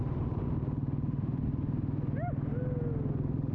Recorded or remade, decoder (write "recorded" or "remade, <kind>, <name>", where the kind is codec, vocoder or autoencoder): recorded